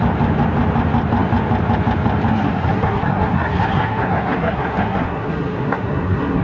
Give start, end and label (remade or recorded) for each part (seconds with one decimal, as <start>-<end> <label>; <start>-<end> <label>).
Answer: 0.0-2.3 recorded; 2.3-6.4 remade